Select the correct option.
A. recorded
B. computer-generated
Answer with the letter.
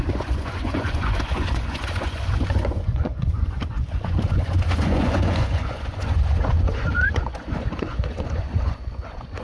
B